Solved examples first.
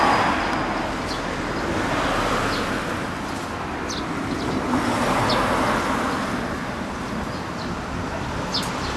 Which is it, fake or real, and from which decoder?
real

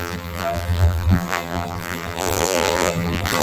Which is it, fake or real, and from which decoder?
fake, vocoder, BigVGAN v2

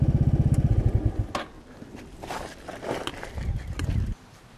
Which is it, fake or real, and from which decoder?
real